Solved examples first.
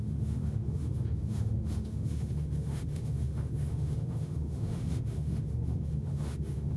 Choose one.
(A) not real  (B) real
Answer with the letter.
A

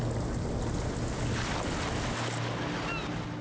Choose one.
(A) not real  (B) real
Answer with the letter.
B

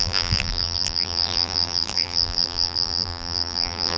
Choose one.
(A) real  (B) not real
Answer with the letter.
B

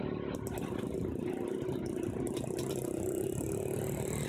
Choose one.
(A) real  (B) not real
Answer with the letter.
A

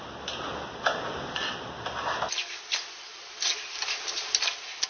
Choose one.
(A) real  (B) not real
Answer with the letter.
A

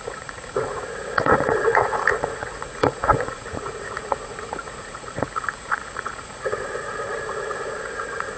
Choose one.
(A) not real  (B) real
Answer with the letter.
A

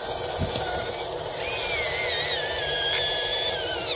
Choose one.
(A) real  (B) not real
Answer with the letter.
A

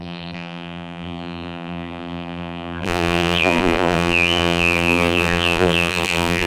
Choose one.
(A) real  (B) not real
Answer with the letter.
B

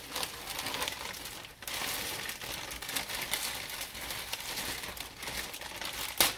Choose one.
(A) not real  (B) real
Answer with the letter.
B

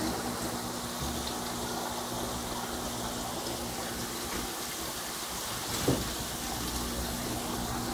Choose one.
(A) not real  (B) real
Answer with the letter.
B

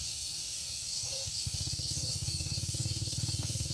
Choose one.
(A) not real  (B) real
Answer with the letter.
A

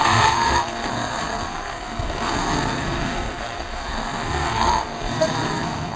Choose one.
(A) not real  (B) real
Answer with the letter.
A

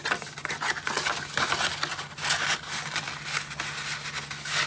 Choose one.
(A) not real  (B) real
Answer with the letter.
B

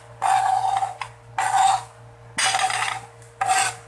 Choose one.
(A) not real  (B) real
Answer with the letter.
B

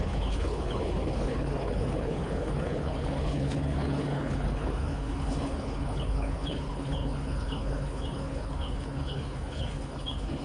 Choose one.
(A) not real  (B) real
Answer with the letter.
A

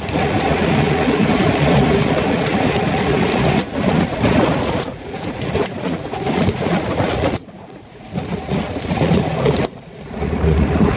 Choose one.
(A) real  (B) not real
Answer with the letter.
B